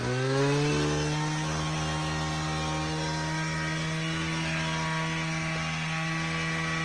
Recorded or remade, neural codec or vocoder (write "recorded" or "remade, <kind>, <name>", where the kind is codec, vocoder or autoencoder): recorded